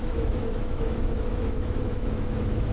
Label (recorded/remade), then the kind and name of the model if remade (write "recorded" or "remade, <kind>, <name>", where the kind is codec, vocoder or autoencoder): remade, autoencoder, DAC-VAE